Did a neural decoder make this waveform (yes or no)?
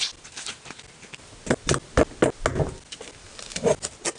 no